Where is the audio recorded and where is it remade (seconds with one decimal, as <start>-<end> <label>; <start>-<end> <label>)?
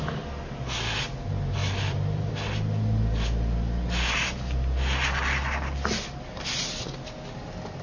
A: 0.0-1.6 recorded; 1.6-2.3 remade; 2.3-7.8 recorded